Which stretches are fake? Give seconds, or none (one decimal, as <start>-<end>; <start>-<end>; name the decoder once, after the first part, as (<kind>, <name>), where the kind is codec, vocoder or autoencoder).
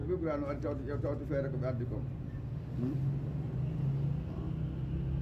none